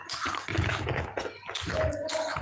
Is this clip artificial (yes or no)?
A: no